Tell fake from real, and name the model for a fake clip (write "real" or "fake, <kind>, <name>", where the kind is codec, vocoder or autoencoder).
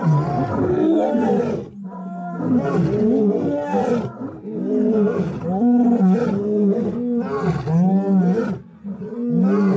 real